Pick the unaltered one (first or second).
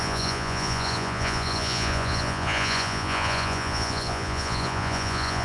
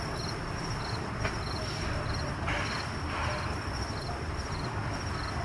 second